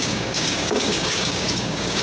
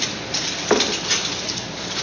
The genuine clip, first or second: second